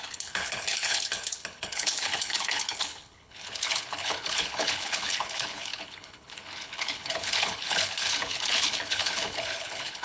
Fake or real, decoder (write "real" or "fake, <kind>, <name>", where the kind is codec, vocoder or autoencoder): fake, codec, HILCodec